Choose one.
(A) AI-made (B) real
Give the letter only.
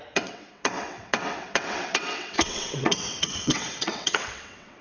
A